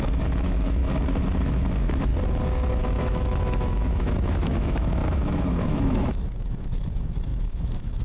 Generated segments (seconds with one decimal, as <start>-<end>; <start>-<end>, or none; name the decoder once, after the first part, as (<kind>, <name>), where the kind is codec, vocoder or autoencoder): 0.0-0.8 (autoencoder, DAC-VAE); 1.4-2.1; 2.7-8.0